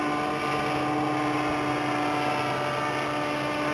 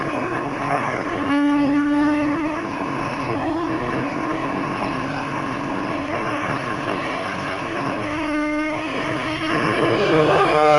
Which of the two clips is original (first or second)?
first